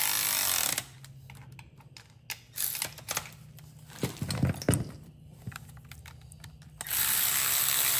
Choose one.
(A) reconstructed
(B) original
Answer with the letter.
B